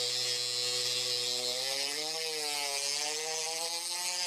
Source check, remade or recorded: recorded